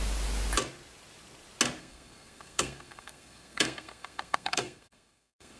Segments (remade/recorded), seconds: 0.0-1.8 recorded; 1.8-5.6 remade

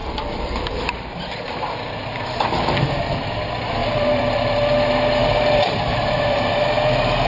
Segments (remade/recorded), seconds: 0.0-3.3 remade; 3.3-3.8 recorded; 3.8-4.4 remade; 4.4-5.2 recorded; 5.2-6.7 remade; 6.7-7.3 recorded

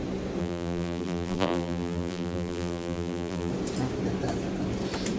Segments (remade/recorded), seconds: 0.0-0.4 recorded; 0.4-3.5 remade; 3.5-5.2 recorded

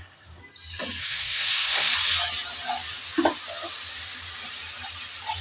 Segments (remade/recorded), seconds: 0.0-0.4 remade; 0.4-1.0 recorded; 1.0-1.9 remade; 1.9-5.4 recorded

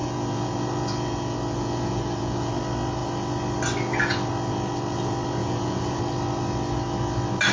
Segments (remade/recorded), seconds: 0.0-2.5 remade; 2.5-5.4 recorded; 5.4-6.0 remade; 6.0-7.5 recorded

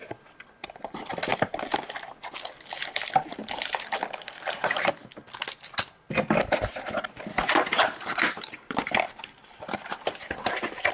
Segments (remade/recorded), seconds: 0.0-1.3 remade; 1.3-2.3 recorded; 2.3-5.0 remade; 5.0-7.8 recorded; 7.8-10.9 remade